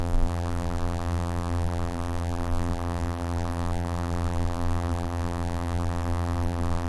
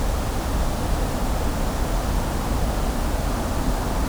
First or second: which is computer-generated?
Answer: first